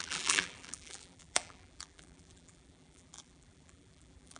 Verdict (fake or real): fake